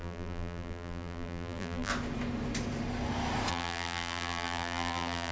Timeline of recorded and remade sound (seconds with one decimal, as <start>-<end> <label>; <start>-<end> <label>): 0.0-1.9 remade; 1.9-3.5 recorded; 3.5-5.3 remade

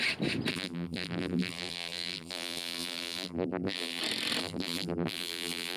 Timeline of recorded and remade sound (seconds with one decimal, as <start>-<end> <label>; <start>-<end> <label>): 0.0-0.5 recorded; 0.5-4.0 remade; 4.0-4.4 recorded; 4.4-5.8 remade

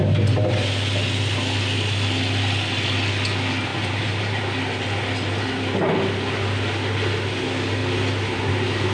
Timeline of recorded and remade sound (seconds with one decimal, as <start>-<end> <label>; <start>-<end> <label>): 0.0-3.7 recorded; 3.7-4.4 remade; 4.4-8.9 recorded

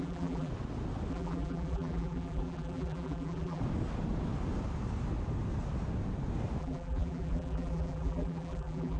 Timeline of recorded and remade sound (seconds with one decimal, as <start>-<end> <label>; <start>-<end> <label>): 0.0-0.5 remade; 0.5-1.1 recorded; 1.1-3.6 remade; 3.6-6.6 recorded; 6.6-9.0 remade